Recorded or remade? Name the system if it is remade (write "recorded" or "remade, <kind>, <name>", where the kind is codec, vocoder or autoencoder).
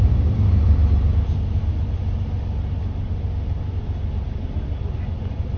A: recorded